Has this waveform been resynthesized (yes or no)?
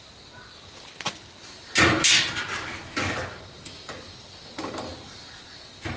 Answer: no